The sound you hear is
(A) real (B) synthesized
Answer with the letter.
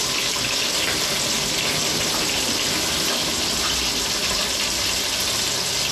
A